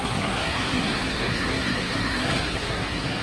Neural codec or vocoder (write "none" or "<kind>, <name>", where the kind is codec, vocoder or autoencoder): codec, SNAC